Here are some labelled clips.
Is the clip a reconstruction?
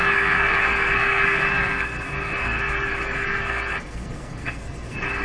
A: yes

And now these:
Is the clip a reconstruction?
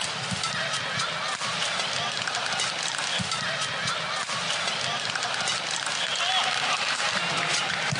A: no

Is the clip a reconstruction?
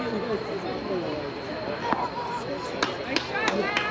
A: no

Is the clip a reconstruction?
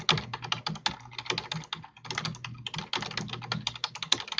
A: no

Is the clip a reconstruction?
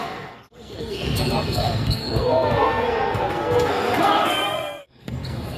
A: yes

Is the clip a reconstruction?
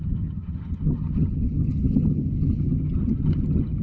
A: yes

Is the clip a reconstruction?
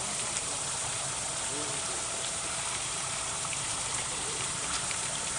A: yes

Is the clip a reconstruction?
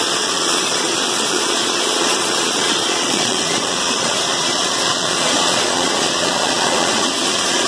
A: yes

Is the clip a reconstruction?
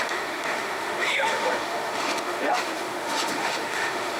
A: yes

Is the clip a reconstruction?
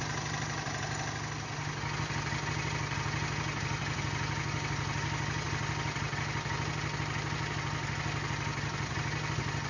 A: no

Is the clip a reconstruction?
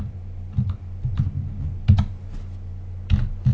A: no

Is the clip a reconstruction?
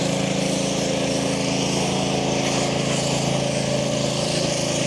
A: no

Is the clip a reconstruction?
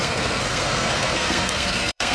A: yes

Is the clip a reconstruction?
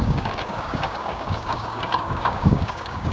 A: yes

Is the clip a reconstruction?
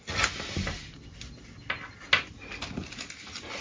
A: no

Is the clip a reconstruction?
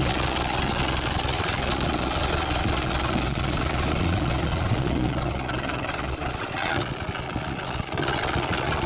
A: yes